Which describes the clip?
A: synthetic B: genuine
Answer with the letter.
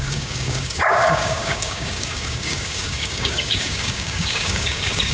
A